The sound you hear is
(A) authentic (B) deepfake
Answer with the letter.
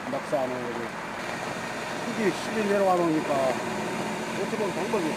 A